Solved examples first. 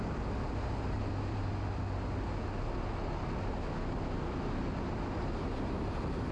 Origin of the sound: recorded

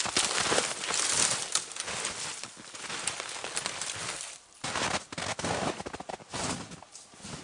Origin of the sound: recorded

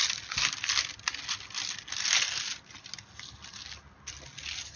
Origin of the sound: recorded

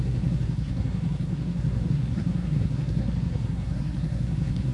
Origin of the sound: remade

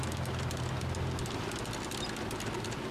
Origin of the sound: recorded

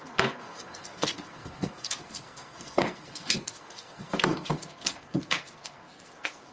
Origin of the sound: remade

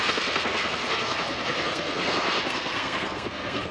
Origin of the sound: remade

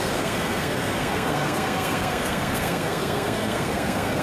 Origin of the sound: remade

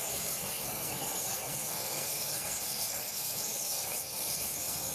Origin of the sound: remade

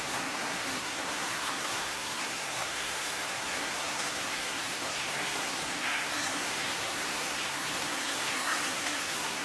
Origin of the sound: remade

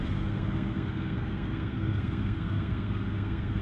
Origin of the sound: remade